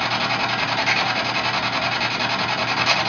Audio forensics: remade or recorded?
recorded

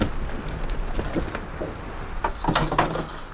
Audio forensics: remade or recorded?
recorded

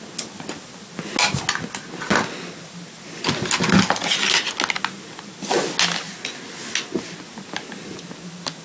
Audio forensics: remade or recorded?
recorded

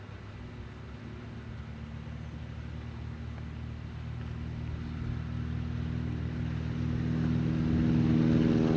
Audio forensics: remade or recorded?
recorded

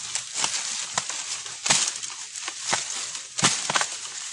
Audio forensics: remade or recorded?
recorded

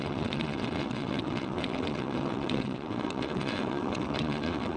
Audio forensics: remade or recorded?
remade